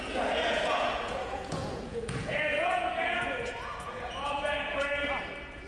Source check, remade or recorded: remade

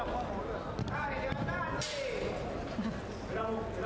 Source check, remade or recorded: recorded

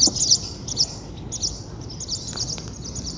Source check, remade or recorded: recorded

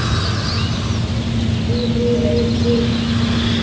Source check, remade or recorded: recorded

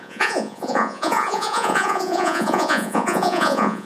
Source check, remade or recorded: remade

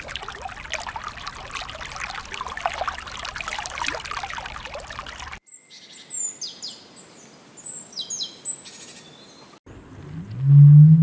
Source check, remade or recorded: recorded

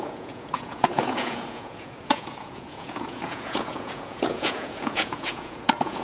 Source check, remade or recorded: remade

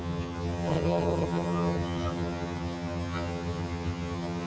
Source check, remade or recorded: remade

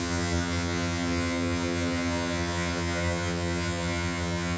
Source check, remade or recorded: remade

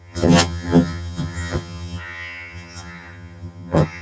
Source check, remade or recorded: remade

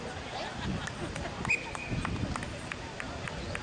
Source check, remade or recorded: recorded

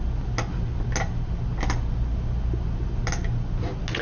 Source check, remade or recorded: recorded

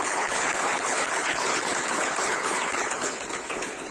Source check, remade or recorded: remade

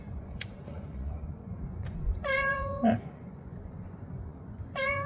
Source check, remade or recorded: remade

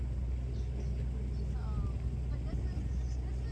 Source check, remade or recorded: recorded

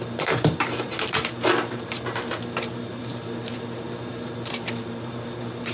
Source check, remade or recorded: remade